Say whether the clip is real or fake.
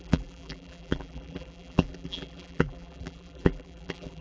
fake